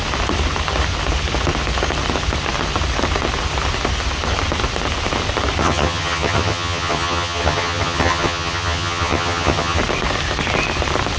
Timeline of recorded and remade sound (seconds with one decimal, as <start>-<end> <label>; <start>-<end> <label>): 0.0-5.6 recorded; 5.6-9.8 remade; 9.8-11.2 recorded